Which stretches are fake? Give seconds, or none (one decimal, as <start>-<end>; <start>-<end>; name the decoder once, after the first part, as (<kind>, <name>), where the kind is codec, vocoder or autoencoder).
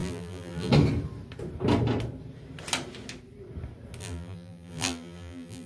0.0-0.7 (vocoder, BigVGAN v2); 4.0-5.7